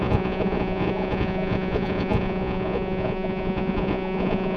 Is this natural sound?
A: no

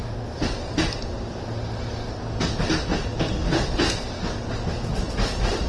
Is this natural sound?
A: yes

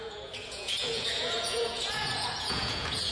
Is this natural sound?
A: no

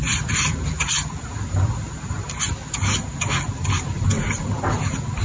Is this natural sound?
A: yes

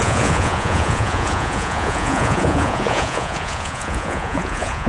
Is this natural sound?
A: no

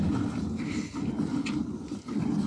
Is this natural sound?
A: yes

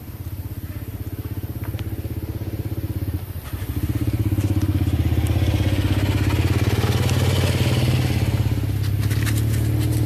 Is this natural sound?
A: yes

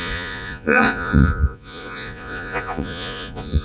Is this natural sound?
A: no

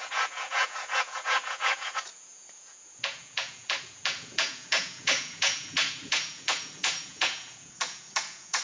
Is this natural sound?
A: no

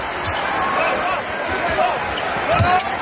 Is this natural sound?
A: yes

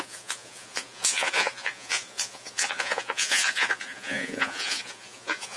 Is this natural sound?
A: no